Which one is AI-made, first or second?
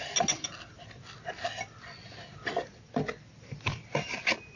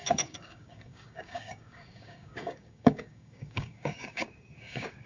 second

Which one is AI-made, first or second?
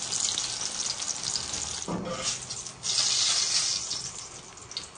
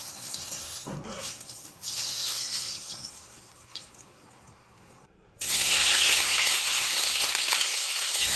second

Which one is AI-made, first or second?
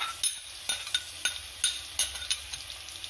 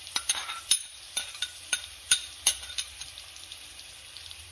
second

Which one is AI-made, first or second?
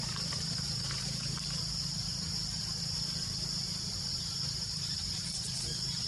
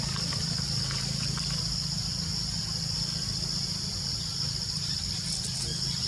first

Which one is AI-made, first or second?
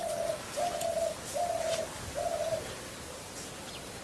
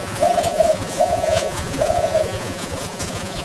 second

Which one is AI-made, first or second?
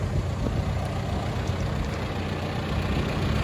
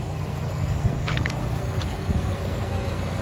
second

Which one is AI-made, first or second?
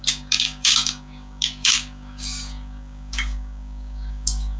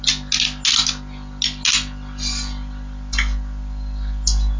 first